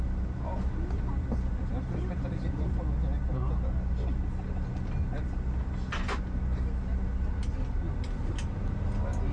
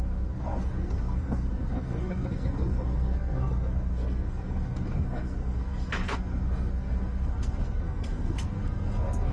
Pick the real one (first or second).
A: first